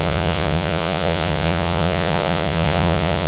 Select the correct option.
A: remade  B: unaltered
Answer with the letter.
A